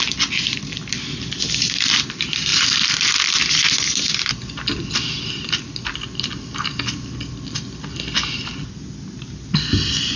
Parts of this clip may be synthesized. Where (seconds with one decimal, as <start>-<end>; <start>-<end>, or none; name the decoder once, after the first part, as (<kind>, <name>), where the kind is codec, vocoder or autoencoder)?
none